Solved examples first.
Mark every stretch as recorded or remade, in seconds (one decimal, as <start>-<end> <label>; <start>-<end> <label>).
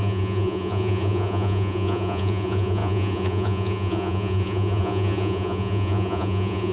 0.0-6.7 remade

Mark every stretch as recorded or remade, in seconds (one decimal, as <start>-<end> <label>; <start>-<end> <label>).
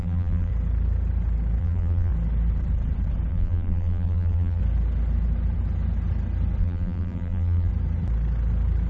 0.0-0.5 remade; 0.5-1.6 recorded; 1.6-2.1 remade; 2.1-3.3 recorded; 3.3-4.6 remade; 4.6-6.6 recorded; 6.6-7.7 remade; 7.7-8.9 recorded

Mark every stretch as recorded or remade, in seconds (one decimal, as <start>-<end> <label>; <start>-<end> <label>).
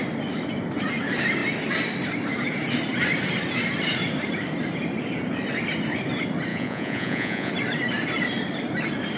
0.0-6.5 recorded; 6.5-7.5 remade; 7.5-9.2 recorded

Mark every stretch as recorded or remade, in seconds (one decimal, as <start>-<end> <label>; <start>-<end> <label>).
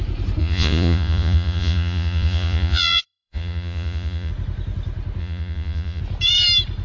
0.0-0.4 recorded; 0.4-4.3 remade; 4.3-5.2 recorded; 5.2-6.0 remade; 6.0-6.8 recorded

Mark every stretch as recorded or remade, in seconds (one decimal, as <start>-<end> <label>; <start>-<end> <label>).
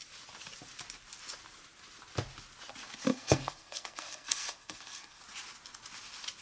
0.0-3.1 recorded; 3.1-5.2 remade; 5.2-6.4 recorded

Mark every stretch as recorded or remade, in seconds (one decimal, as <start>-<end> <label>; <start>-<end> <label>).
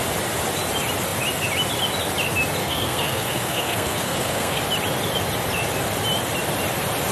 0.0-2.6 recorded; 2.6-4.6 remade; 4.6-7.1 recorded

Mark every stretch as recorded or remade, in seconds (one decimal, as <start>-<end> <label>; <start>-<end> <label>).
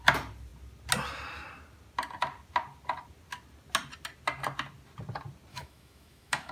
0.0-5.5 recorded; 5.5-6.5 remade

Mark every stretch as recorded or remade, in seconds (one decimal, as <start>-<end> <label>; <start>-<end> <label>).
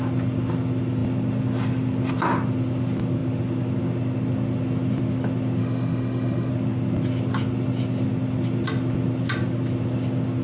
0.0-5.6 recorded; 5.6-6.5 remade; 6.5-10.4 recorded